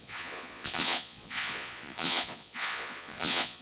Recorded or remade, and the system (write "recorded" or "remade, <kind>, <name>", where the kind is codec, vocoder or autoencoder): remade, vocoder, Vocos